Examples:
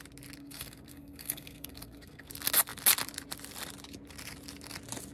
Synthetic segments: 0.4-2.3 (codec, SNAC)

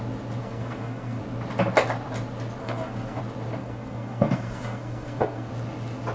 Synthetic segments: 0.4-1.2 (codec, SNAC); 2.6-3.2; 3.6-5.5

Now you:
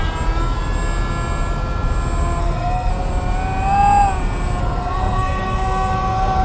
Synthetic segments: 2.4-2.9 (codec, SNAC); 4.6-6.4

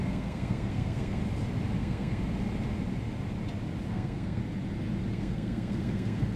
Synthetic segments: 0.0-1.2 (codec, SNAC); 1.8-2.2; 3.9-4.4; 5.1-6.4

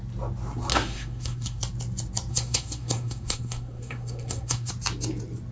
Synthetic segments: 0.7-1.6 (codec, SNAC); 2.3-4.7

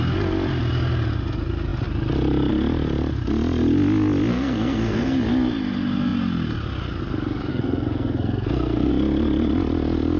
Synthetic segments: 4.3-5.2 (codec, SNAC); 7.5-8.9